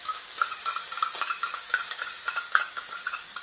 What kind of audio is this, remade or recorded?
remade